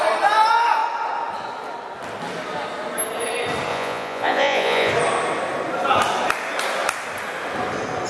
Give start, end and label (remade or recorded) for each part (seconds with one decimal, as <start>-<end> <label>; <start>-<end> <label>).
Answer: 0.0-3.7 recorded; 3.7-4.9 remade; 4.9-8.1 recorded